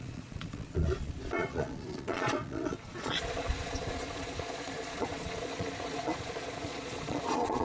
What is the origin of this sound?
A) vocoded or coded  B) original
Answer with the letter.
A